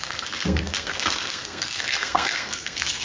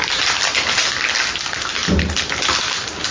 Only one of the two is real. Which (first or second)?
second